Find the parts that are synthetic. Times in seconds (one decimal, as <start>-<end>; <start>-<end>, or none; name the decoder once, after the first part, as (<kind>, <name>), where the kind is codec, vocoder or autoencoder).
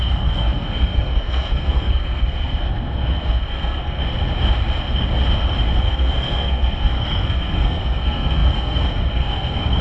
0.0-4.0 (codec, SNAC); 5.8-9.8